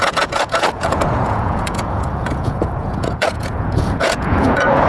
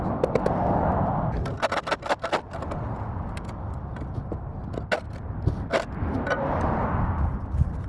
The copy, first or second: first